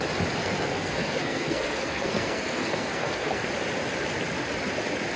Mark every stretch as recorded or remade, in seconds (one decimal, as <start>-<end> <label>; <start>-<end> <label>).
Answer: 0.0-0.4 recorded; 0.4-3.5 remade; 3.5-5.2 recorded